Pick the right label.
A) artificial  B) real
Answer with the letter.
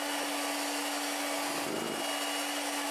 B